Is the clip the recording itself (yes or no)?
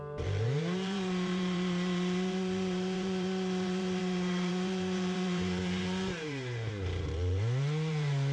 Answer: no